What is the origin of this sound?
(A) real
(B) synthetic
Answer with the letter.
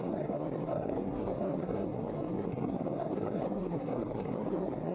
B